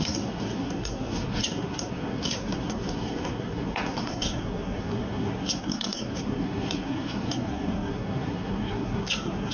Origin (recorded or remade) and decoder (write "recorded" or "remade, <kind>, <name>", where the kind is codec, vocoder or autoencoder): remade, codec, SNAC